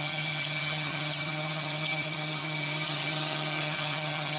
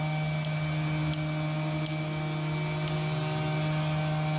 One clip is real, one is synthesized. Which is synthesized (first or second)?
first